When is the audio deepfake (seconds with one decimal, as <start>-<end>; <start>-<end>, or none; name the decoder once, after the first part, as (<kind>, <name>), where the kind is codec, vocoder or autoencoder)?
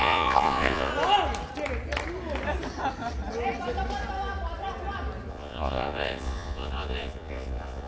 0.0-0.9 (vocoder, Vocos); 5.3-7.9